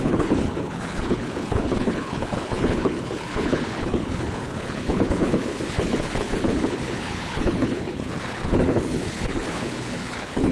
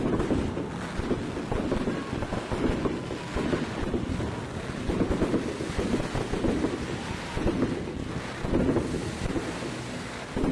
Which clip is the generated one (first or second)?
first